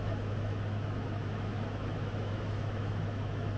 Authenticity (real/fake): fake